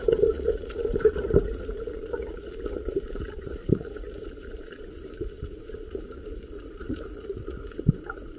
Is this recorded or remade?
remade